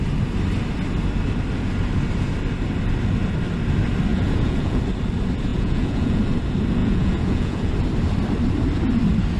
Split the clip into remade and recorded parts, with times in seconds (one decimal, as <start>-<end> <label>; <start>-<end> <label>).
0.0-4.1 recorded; 4.1-4.8 remade; 4.8-5.5 recorded; 5.5-6.2 remade; 6.2-6.8 recorded; 6.8-7.7 remade; 7.7-9.4 recorded